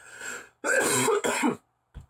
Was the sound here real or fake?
real